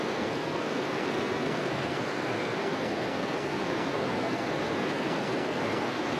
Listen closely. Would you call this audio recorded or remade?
remade